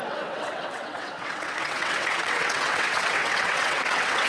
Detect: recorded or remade remade